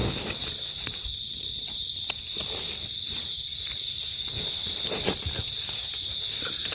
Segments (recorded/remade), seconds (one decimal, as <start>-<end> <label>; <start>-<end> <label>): 0.0-6.7 recorded